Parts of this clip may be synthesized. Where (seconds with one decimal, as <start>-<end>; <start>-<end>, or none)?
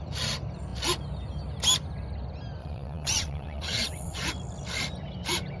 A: 2.6-4.2